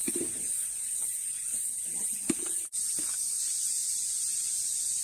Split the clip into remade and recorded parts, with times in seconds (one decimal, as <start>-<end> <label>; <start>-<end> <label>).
0.0-3.0 remade; 3.0-5.0 recorded